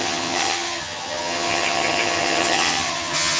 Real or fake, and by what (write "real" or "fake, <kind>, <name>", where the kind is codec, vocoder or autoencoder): fake, vocoder, HiFi-GAN